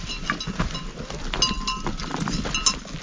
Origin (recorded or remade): recorded